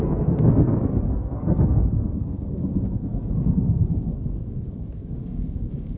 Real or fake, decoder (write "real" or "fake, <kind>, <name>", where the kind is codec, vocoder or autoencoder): fake, codec, SNAC